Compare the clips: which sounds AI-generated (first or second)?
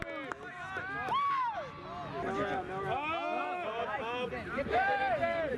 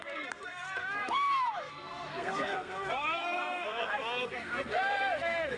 second